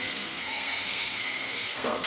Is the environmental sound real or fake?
fake